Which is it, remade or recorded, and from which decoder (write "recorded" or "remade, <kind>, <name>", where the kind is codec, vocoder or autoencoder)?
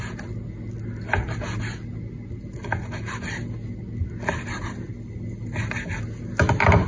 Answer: recorded